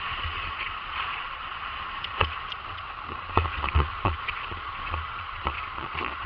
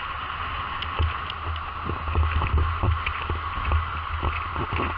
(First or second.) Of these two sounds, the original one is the second